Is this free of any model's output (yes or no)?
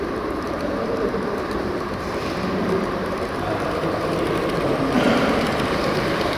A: no